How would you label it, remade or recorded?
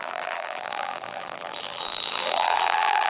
remade